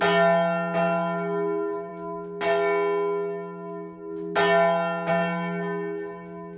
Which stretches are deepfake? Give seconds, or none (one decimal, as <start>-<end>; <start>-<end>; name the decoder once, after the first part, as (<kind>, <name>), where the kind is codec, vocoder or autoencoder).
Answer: none

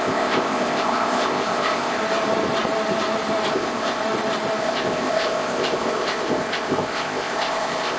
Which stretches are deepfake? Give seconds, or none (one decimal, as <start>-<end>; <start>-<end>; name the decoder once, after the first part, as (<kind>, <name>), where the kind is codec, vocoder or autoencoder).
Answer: 0.0-2.0 (codec, ZipCodec); 3.5-4.0; 4.6-8.0